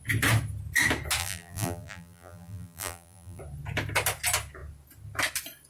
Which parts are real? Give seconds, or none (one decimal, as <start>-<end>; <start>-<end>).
0.0-1.2; 3.4-5.7